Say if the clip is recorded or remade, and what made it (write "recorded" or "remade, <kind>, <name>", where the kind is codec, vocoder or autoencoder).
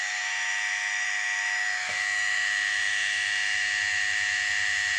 remade, autoencoder, DAC-VAE